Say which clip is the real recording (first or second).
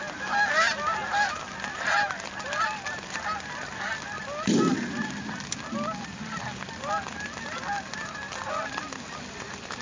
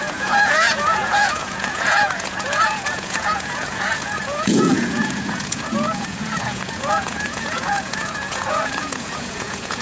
first